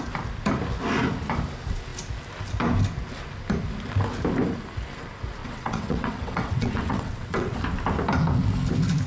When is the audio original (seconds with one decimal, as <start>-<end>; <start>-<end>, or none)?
0.0-5.4; 7.6-9.1